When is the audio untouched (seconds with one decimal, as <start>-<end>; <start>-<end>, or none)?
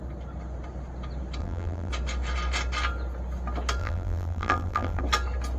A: 0.0-1.4; 1.9-3.8; 5.0-5.6